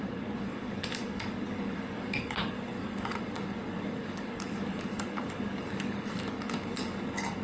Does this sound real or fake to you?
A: fake